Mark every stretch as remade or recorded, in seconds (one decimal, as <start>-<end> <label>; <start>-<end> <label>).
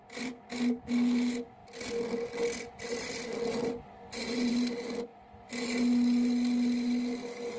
0.0-7.6 recorded